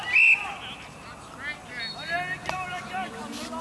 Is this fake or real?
real